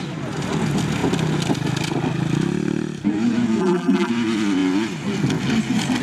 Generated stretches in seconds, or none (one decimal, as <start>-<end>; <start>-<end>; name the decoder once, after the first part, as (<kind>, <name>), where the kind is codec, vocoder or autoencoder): 3.6-4.1 (vocoder, BigVGAN v2)